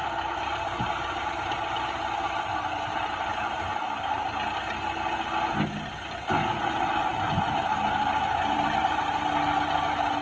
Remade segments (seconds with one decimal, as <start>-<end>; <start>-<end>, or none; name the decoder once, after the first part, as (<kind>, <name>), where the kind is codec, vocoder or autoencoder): 0.0-1.3 (vocoder, BigVGAN v2); 3.3-4.1; 7.1-9.1